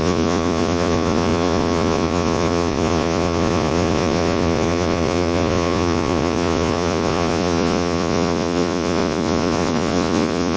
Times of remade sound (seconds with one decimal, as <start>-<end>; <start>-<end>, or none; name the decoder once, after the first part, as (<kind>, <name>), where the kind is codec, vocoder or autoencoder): 0.0-10.6 (vocoder, Vocos)